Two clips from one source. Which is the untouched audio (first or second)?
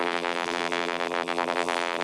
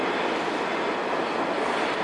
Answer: second